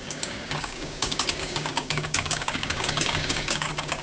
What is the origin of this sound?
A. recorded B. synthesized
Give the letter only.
B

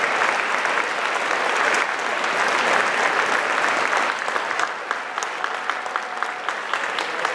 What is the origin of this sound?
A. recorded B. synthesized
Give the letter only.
A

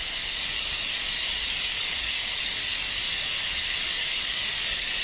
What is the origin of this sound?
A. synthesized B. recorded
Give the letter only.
A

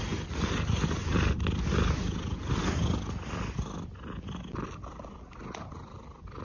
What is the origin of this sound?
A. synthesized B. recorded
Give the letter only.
B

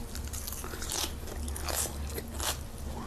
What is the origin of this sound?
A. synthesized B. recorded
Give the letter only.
B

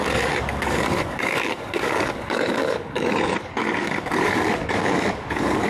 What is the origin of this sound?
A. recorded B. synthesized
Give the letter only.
B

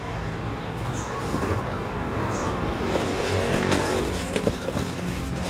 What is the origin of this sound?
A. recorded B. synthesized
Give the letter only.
B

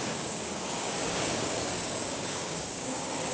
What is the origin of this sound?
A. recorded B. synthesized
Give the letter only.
B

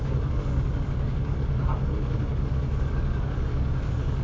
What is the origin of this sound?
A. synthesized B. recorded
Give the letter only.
A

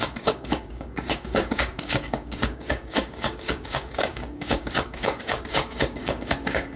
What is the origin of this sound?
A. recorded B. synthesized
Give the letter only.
B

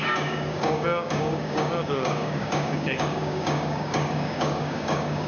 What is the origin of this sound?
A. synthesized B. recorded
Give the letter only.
A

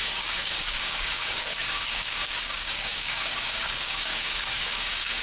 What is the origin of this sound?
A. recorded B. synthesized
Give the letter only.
B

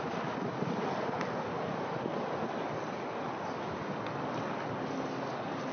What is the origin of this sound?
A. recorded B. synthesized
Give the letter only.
A